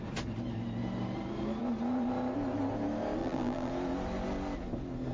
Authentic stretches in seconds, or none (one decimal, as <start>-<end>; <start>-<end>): 0.0-3.2; 3.7-5.1